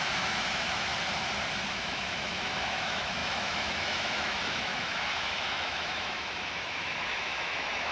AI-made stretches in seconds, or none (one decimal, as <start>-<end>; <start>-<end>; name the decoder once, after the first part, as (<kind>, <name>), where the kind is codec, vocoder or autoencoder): 0.0-0.9 (autoencoder, DAC-VAE); 1.7-7.9